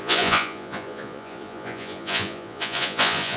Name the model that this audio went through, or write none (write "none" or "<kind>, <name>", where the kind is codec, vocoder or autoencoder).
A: vocoder, Vocos